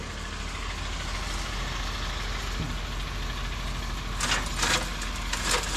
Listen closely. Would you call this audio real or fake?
real